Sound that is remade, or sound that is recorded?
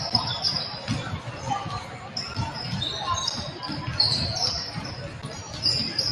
remade